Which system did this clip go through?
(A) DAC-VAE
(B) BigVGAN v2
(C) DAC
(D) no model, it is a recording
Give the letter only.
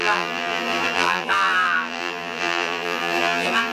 B